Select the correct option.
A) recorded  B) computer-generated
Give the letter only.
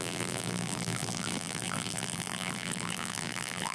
B